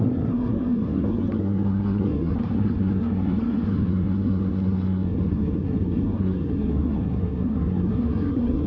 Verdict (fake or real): fake